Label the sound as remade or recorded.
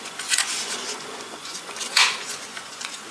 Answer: remade